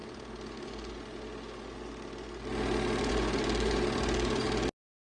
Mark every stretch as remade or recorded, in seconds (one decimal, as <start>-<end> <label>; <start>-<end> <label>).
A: 0.0-5.1 recorded